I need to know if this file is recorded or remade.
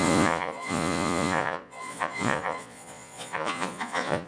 remade